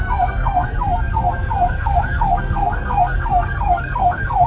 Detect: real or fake fake